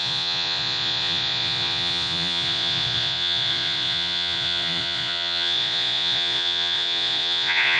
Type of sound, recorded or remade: remade